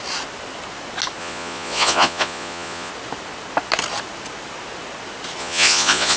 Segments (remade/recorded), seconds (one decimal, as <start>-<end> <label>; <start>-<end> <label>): 0.0-1.2 recorded; 1.2-2.9 remade; 2.9-5.4 recorded; 5.4-6.2 remade